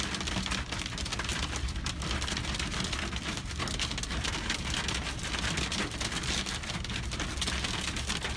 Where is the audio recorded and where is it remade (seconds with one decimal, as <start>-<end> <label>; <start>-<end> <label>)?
0.0-1.3 recorded; 1.3-6.3 remade; 6.3-8.4 recorded